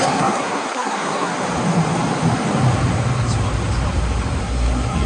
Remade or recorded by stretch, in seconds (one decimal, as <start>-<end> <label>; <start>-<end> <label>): 0.0-1.3 remade; 1.3-4.4 recorded; 4.4-5.1 remade